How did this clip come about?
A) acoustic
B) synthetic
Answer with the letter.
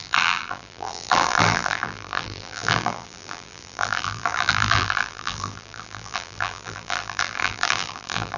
B